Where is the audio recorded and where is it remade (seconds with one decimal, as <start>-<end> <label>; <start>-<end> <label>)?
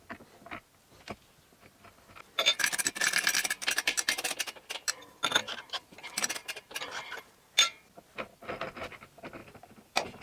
0.0-9.4 recorded; 9.4-10.2 remade